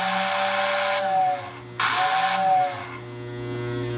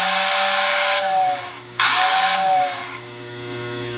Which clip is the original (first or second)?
first